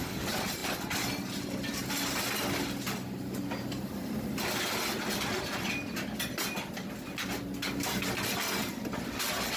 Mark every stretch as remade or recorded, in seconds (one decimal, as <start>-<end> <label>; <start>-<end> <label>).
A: 0.0-9.6 recorded